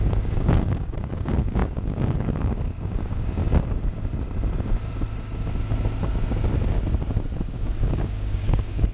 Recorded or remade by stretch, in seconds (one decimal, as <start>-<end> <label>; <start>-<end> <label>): 0.0-3.4 remade; 3.4-7.5 recorded; 7.5-8.9 remade